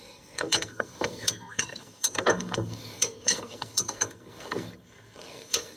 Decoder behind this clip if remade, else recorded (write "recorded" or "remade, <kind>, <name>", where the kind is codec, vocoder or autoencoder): remade, codec, SNAC